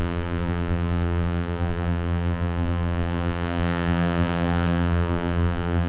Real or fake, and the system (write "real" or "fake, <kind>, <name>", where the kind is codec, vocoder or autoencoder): fake, vocoder, BigVGAN v2